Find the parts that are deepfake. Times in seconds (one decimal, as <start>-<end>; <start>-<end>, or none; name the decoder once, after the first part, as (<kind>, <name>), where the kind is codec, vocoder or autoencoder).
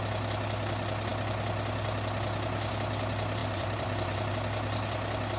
3.4-4.3 (vocoder, BigVGAN v2)